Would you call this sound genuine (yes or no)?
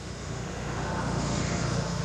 no